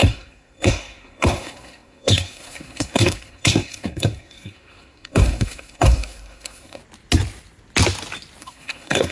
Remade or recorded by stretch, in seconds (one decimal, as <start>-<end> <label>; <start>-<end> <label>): 0.0-6.8 remade; 6.8-8.4 recorded; 8.4-9.1 remade